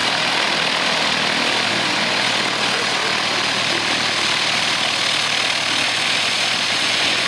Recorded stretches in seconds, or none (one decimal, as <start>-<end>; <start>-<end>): 0.0-1.7; 3.0-5.8